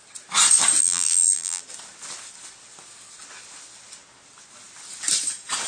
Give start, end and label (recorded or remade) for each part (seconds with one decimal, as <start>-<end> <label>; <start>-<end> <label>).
0.0-0.8 recorded; 0.8-1.6 remade; 1.6-5.7 recorded